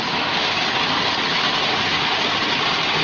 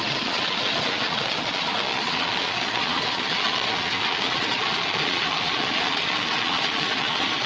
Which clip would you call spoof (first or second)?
second